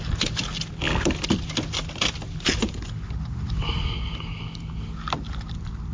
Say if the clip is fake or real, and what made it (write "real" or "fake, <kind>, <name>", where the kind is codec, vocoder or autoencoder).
real